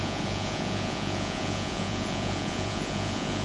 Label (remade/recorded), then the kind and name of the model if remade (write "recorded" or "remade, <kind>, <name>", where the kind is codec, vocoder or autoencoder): remade, vocoder, Vocos